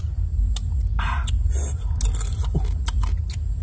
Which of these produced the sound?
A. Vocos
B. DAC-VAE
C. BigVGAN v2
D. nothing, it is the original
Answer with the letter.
D